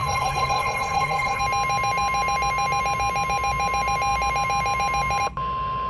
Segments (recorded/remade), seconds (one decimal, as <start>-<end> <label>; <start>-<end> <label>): 0.0-1.4 remade; 1.4-5.9 recorded